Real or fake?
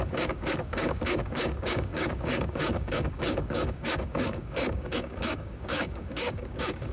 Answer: fake